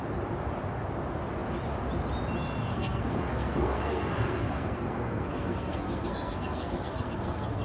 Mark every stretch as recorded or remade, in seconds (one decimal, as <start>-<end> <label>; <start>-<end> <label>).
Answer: 0.0-2.7 recorded; 2.7-7.6 remade